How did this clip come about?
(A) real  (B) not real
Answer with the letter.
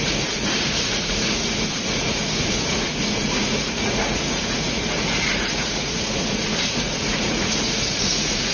B